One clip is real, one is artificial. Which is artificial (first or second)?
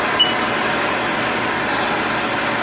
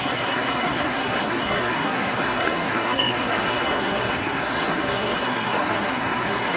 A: second